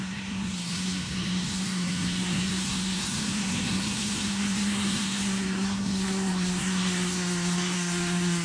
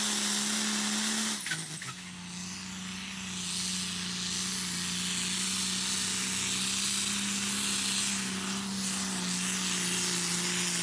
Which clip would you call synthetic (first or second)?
first